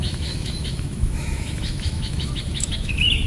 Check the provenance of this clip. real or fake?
fake